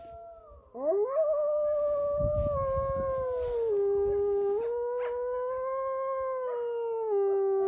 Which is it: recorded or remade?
recorded